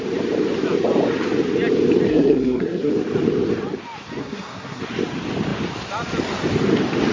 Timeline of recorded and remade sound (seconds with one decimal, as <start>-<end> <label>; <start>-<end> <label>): 0.0-2.1 recorded; 2.1-2.9 remade; 2.9-4.2 recorded; 4.2-4.8 remade; 4.8-7.1 recorded